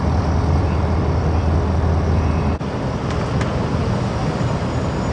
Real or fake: real